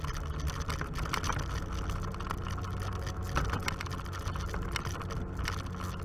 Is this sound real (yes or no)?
yes